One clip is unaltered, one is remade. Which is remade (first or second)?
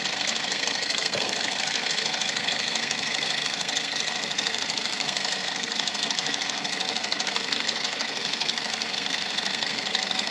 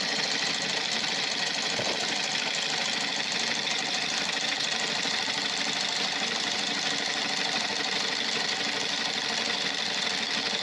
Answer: first